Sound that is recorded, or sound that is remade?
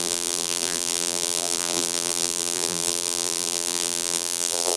remade